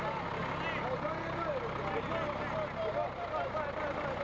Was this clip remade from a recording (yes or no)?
no